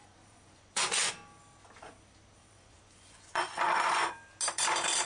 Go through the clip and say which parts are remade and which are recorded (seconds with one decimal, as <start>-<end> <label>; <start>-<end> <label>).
0.0-1.1 remade; 1.1-2.4 recorded; 2.4-4.1 remade; 4.1-5.1 recorded